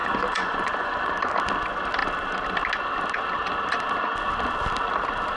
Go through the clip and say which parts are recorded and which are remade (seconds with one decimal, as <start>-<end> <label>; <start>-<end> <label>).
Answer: 0.0-1.1 remade; 1.1-5.4 recorded